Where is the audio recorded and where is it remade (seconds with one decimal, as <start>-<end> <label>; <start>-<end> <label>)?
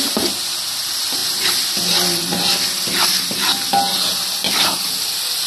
0.0-5.5 recorded